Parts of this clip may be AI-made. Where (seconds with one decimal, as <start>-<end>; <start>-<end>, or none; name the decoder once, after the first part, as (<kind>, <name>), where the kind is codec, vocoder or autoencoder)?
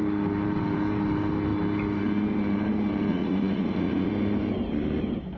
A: 3.1-4.1 (vocoder, Vocos)